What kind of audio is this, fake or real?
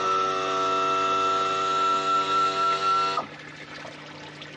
real